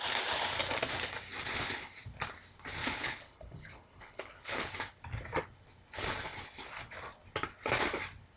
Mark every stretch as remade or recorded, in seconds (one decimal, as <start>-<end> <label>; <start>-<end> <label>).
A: 0.0-2.8 recorded; 2.8-4.7 remade; 4.7-8.4 recorded